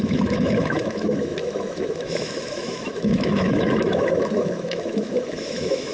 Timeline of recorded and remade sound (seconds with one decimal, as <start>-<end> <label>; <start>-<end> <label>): 0.0-5.9 remade